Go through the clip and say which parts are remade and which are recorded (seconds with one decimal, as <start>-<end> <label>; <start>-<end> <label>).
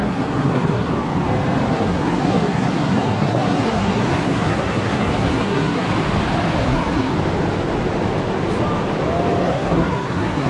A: 0.0-0.9 remade; 0.9-1.7 recorded; 1.7-5.9 remade; 5.9-6.6 recorded; 6.6-7.1 remade; 7.1-9.4 recorded; 9.4-10.5 remade